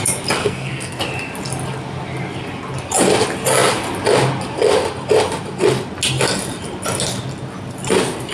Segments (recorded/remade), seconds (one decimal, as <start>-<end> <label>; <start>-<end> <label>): 0.0-0.4 recorded; 0.4-1.0 remade; 1.0-8.3 recorded